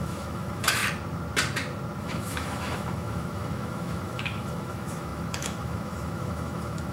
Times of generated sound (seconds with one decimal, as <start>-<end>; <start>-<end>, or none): 0.0-0.8; 2.0-6.9